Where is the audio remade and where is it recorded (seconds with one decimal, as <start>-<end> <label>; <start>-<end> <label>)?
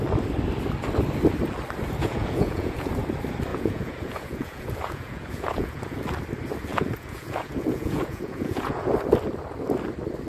0.0-2.0 recorded; 2.0-2.9 remade; 2.9-3.5 recorded; 3.5-6.0 remade; 6.0-6.7 recorded; 6.7-8.9 remade; 8.9-10.3 recorded